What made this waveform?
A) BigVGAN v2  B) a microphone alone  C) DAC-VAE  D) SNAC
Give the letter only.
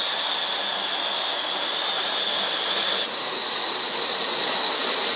B